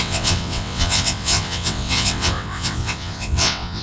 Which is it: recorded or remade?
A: remade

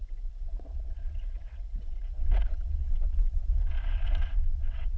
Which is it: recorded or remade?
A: remade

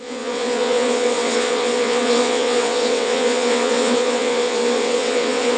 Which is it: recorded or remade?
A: remade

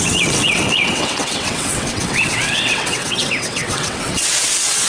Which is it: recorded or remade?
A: remade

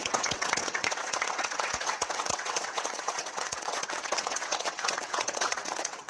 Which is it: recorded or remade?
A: remade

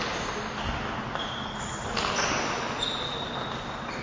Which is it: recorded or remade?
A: recorded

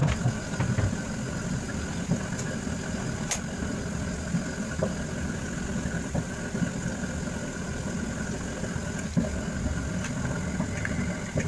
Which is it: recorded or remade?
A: recorded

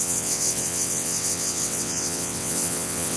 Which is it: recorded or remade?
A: remade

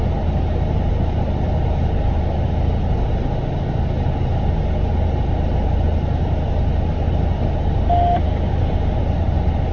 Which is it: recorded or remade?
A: recorded